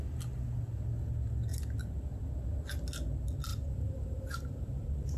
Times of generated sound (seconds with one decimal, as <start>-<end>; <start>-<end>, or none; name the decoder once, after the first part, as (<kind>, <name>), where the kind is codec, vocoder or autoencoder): 3.5-5.2 (vocoder, BigVGAN v2)